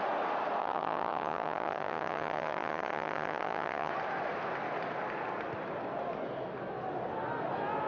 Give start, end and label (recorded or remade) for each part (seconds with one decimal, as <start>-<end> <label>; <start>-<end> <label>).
0.0-0.6 recorded; 0.6-3.9 remade; 3.9-7.9 recorded